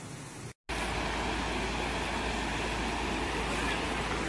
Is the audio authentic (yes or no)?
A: yes